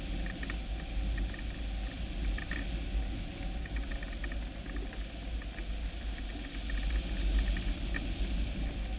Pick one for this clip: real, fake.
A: real